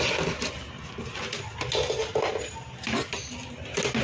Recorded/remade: recorded